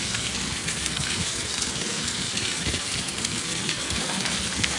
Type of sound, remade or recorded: remade